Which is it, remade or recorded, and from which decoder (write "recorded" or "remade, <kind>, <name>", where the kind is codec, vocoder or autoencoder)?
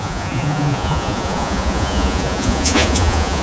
remade, vocoder, Vocos